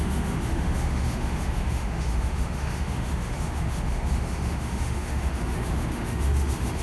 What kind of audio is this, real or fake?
fake